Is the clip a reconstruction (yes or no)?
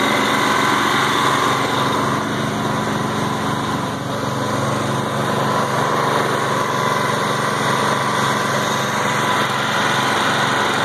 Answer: no